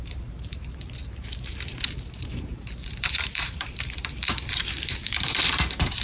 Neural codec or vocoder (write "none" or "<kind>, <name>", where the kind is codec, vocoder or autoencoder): vocoder, BigVGAN v2